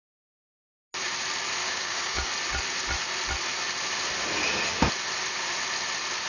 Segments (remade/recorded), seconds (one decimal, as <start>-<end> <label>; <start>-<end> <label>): 0.0-1.6 recorded; 1.6-2.3 remade; 2.3-6.3 recorded